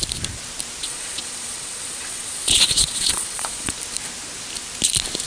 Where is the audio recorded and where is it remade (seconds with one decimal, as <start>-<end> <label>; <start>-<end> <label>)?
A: 0.0-0.8 recorded; 0.8-3.7 remade; 3.7-5.3 recorded